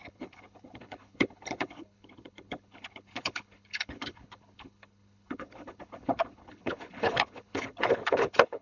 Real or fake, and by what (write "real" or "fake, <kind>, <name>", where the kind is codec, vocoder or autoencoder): fake, codec, HILCodec